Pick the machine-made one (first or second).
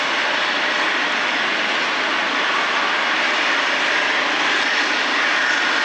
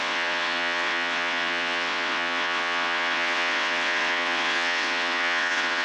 second